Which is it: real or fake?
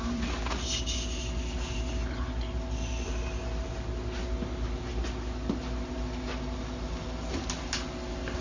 real